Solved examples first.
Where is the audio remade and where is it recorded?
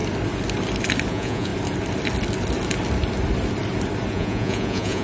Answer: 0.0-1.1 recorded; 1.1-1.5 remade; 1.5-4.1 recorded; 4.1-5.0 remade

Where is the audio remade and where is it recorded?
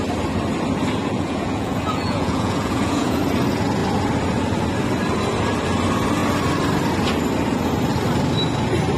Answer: 0.0-1.0 recorded; 1.0-3.2 remade; 3.2-9.0 recorded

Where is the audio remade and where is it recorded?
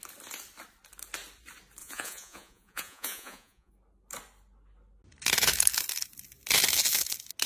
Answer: 0.0-1.8 recorded; 1.8-3.7 remade; 3.7-7.5 recorded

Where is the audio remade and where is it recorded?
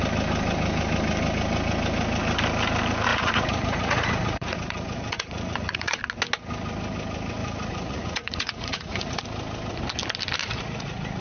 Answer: 0.0-3.1 recorded; 3.1-6.0 remade; 6.0-7.4 recorded; 7.4-9.2 remade; 9.2-10.4 recorded; 10.4-11.2 remade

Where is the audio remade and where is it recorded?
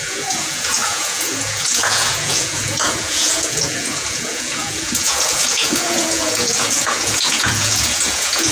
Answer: 0.0-8.5 remade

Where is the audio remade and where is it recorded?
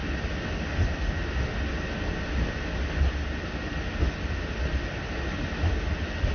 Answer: 0.0-6.3 recorded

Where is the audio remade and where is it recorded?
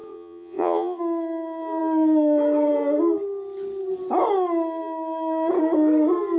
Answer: 0.0-1.0 remade; 1.0-6.4 recorded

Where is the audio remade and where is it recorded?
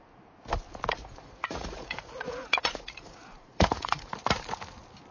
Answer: 0.0-1.0 recorded; 1.0-4.1 remade; 4.1-5.1 recorded